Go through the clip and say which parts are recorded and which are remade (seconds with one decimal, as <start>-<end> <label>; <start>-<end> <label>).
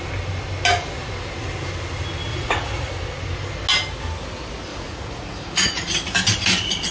0.0-2.3 recorded; 2.3-2.9 remade; 2.9-4.7 recorded; 4.7-5.9 remade; 5.9-6.9 recorded